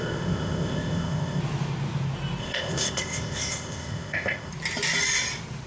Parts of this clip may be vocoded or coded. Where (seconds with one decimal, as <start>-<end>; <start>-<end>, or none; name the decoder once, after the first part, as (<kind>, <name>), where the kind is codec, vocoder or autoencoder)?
0.0-1.4 (codec, ZipCodec); 2.4-4.5